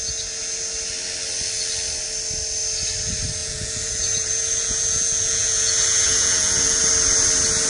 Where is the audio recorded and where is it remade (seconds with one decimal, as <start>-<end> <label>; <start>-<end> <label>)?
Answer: 0.0-3.4 recorded; 3.4-6.8 remade; 6.8-7.7 recorded